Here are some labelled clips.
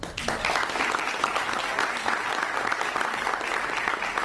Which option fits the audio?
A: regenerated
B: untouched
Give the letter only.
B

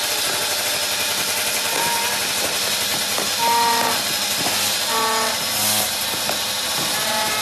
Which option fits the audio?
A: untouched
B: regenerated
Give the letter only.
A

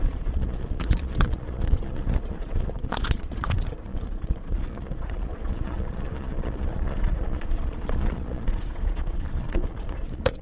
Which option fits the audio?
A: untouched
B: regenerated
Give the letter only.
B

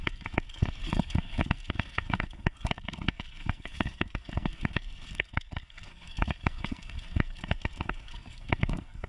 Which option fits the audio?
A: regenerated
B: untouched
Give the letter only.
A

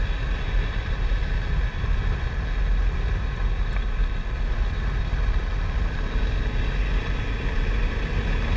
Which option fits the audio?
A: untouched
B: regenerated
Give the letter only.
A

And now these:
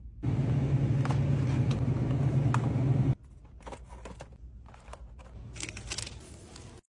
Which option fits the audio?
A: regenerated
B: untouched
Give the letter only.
B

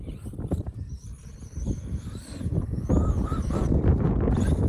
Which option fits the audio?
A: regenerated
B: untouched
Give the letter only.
A